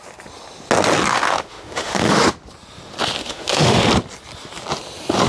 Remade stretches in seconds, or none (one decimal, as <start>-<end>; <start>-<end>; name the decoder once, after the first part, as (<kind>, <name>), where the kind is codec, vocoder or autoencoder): 1.1-2.2 (autoencoder, DAC-VAE); 3.2-3.9